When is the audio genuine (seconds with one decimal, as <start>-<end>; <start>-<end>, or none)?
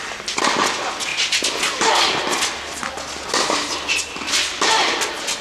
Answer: 0.0-5.4